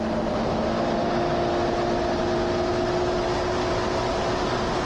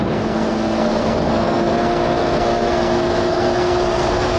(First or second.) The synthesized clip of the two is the second